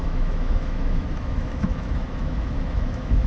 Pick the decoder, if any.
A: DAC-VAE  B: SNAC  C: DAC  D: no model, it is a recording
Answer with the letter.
A